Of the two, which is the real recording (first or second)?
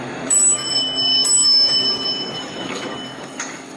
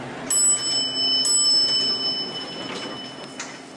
second